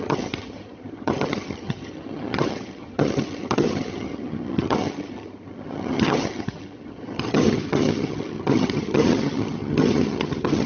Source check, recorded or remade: remade